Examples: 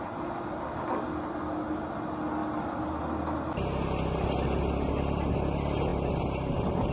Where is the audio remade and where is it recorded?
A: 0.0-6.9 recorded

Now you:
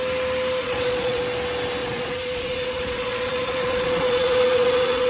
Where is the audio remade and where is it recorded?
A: 0.0-0.6 recorded; 0.6-1.2 remade; 1.2-1.8 recorded; 1.8-5.1 remade

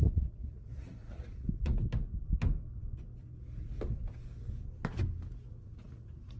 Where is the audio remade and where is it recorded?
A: 0.0-1.7 remade; 1.7-5.5 recorded; 5.5-6.4 remade

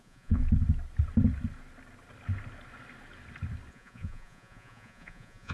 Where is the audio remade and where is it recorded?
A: 0.0-0.4 remade; 0.4-3.7 recorded; 3.7-5.5 remade

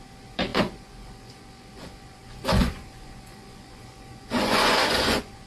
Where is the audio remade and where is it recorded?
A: 0.0-5.5 remade